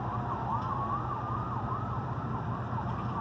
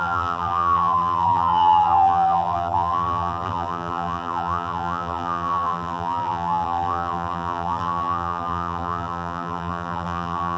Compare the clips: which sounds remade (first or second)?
second